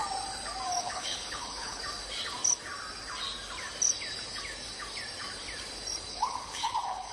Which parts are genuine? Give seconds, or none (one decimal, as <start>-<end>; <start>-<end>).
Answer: 0.0-0.8; 1.8-6.1